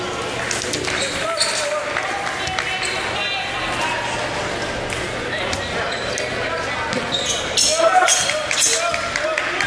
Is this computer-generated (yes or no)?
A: no